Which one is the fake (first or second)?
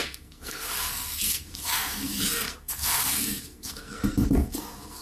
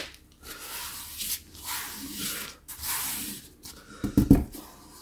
first